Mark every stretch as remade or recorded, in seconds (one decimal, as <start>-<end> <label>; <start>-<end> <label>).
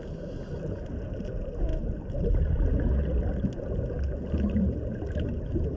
0.0-5.8 recorded